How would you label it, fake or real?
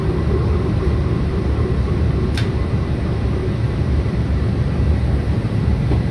fake